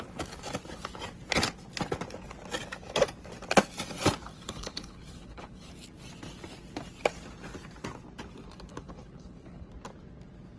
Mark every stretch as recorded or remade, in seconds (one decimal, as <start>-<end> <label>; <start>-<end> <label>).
0.0-4.3 recorded; 4.3-5.7 remade; 5.7-8.7 recorded; 8.7-9.7 remade; 9.7-10.6 recorded